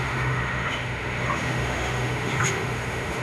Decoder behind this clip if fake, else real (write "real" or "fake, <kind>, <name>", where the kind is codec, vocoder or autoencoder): fake, autoencoder, DAC-VAE